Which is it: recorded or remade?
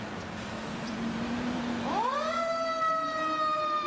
remade